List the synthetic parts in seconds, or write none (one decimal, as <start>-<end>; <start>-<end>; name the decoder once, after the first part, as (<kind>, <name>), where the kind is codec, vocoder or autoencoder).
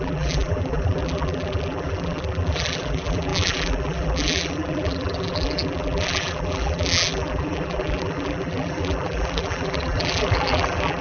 0.0-11.0 (vocoder, BigVGAN v2)